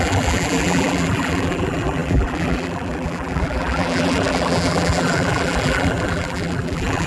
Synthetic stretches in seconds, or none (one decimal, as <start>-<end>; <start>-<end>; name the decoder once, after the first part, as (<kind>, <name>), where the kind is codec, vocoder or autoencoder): 0.0-7.1 (vocoder, BigVGAN v2)